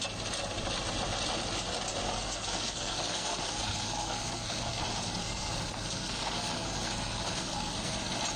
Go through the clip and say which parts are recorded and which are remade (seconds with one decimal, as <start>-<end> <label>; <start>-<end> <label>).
0.0-2.1 recorded; 2.1-4.8 remade; 4.8-5.2 recorded; 5.2-8.0 remade; 8.0-8.4 recorded